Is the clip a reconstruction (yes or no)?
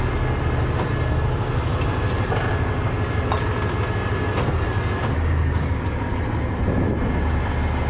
no